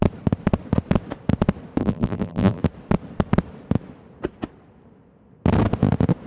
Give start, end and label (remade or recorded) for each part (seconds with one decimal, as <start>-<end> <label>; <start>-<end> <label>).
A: 0.0-1.8 recorded; 1.8-2.6 remade; 2.6-6.3 recorded